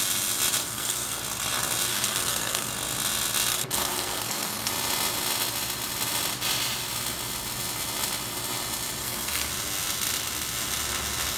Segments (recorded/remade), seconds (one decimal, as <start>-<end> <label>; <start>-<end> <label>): 0.0-0.6 recorded; 0.6-1.2 remade; 1.2-1.9 recorded; 1.9-2.7 remade; 2.7-3.5 recorded; 3.5-4.7 remade; 4.7-9.0 recorded; 9.0-9.5 remade; 9.5-11.4 recorded